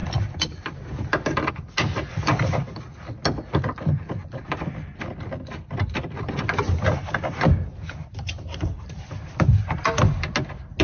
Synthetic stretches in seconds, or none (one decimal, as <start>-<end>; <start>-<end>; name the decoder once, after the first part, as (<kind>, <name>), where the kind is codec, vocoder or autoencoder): none